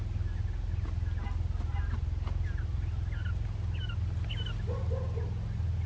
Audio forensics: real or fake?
real